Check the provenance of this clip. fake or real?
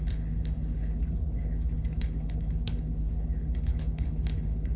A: fake